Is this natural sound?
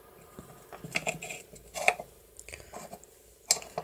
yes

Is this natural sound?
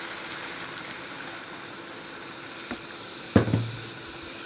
yes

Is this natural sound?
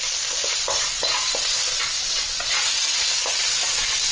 yes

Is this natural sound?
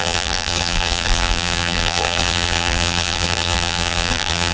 no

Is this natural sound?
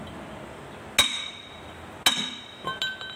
yes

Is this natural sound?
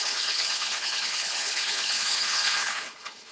no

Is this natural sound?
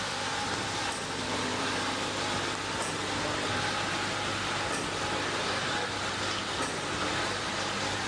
yes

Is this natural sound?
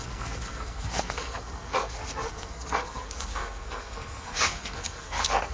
no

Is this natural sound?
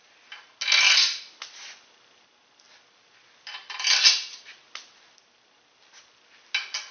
yes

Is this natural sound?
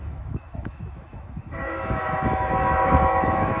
no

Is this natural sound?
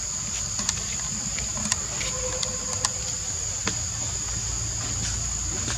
yes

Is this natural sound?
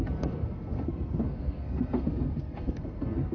no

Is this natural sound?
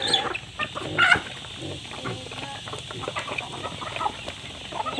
yes